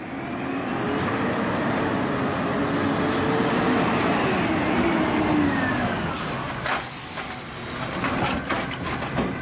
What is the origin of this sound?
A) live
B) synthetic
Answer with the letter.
A